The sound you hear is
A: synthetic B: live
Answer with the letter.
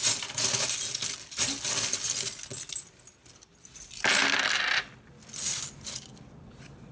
B